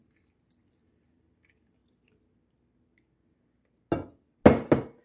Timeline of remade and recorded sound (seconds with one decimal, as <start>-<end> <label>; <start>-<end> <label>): 0.0-1.8 remade; 1.8-5.0 recorded